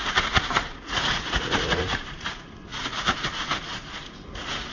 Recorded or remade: remade